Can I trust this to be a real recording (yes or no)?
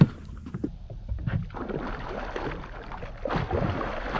yes